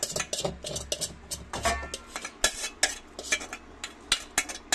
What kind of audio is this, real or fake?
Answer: real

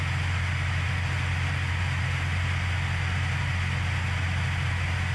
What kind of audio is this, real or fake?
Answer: real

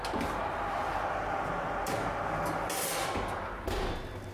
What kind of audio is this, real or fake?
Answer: real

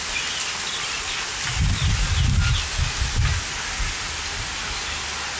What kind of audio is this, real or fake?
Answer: real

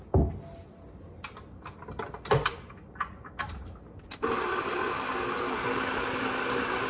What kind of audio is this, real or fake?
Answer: real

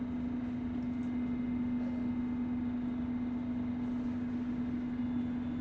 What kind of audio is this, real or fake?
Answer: real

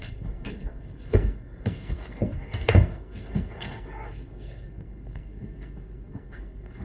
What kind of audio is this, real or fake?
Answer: fake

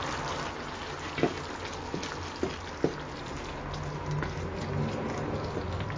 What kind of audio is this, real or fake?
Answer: real